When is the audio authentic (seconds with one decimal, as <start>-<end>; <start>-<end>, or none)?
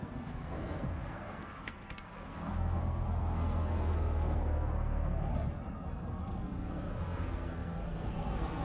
none